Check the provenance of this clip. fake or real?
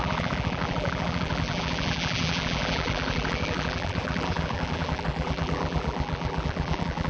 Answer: fake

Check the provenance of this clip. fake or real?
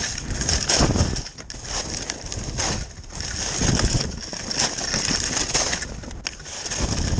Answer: real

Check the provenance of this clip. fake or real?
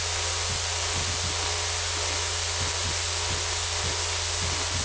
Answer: real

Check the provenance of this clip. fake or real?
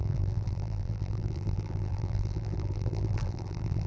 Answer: fake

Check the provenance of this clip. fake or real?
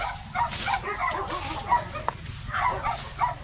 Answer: real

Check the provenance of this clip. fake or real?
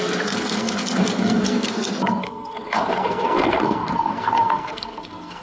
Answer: fake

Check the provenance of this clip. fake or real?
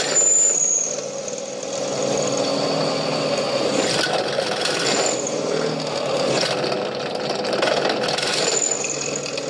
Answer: real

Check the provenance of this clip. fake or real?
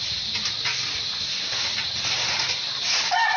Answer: real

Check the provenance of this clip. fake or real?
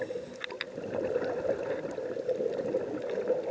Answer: real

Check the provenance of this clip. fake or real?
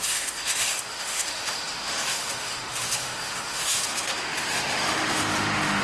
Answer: fake